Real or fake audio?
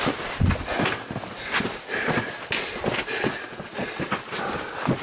real